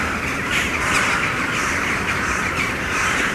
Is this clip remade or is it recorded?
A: remade